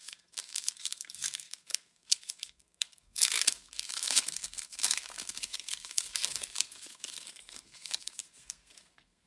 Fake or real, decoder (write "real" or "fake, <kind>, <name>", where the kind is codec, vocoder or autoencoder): fake, codec, SNAC